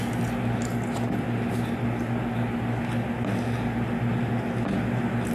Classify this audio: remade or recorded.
recorded